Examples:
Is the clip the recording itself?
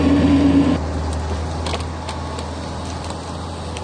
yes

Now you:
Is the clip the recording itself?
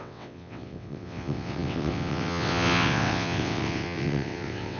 no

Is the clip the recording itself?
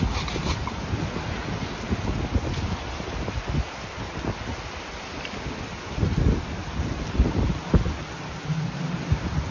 yes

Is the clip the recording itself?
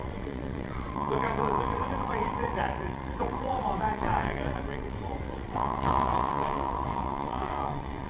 no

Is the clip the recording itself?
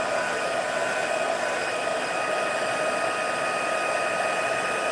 yes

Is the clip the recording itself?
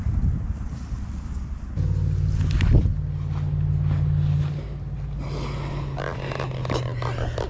yes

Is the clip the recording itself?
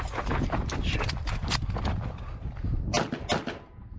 yes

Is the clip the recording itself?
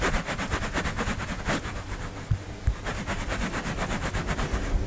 yes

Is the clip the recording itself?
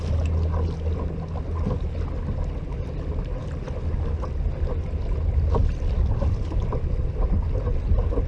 yes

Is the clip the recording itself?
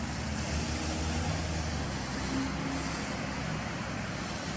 yes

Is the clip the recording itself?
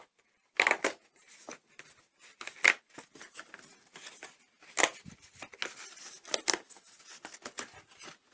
yes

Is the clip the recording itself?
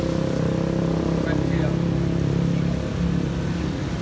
yes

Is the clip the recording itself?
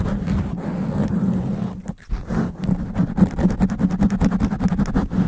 yes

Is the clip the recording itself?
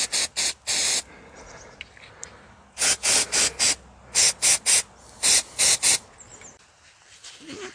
yes